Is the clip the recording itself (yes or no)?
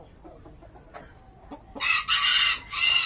yes